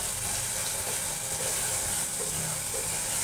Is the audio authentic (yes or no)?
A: yes